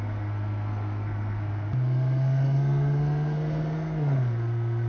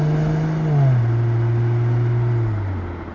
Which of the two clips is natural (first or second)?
second